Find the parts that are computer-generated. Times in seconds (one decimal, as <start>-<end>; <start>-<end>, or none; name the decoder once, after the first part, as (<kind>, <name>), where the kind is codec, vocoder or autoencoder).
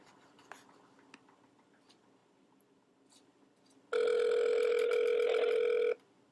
none